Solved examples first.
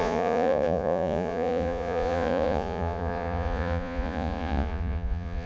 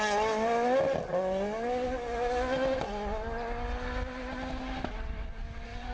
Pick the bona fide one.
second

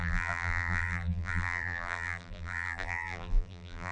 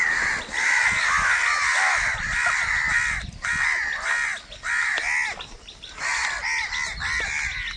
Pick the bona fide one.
second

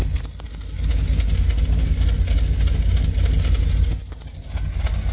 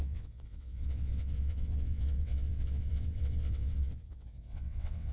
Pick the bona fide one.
first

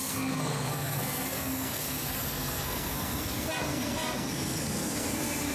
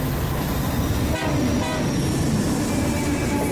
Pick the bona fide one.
second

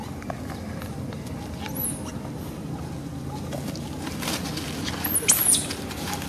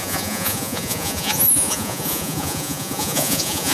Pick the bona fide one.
first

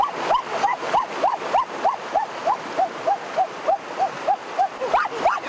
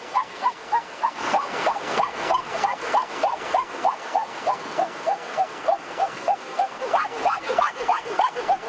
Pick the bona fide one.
first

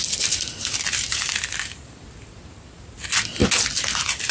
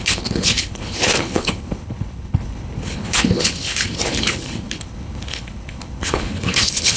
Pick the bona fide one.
first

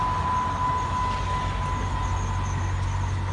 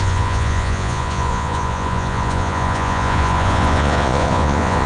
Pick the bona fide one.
first